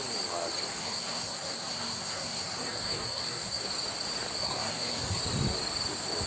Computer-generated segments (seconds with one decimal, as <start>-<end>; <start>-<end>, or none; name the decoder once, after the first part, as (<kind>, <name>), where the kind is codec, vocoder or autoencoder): 0.8-3.6 (codec, SNAC); 4.4-5.2